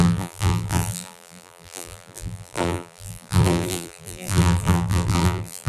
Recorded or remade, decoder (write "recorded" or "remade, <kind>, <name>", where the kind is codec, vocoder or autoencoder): remade, vocoder, BigVGAN v2